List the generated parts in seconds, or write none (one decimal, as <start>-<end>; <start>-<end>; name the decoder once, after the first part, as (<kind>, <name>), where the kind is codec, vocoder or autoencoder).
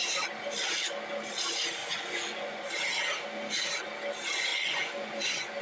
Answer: 1.8-2.7 (vocoder, Vocos); 4.5-5.6